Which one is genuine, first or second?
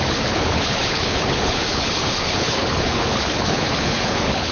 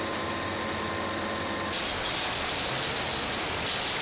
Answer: second